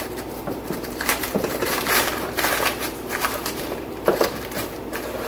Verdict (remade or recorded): remade